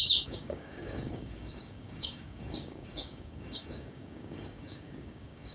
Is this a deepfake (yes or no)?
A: yes